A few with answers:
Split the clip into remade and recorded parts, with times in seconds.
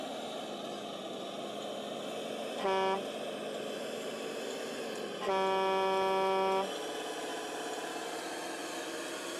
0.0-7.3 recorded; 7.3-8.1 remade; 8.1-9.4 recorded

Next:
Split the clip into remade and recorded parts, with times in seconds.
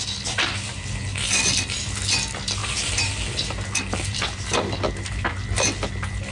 0.0-2.6 recorded; 2.6-5.1 remade; 5.1-6.3 recorded